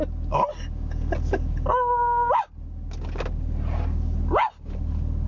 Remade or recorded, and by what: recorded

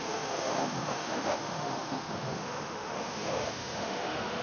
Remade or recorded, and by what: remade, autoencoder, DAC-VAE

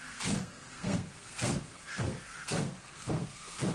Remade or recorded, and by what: remade, codec, SNAC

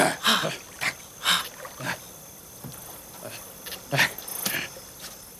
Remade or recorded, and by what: recorded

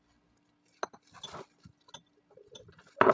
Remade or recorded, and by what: recorded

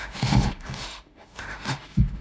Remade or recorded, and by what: remade, autoencoder, DAC-VAE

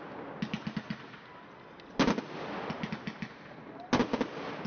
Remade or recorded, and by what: recorded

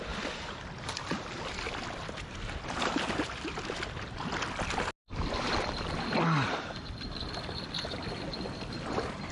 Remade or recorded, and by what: recorded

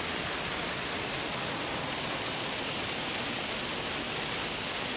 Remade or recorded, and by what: recorded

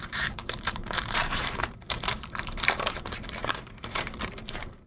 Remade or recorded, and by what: remade, vocoder, BigVGAN v2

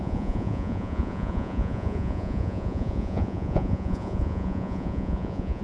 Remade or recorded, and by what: remade, vocoder, Vocos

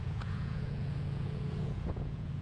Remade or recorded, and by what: remade, vocoder, Vocos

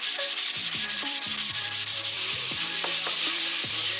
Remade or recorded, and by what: remade, vocoder, BigVGAN v2